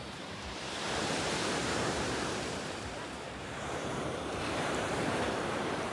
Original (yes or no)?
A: no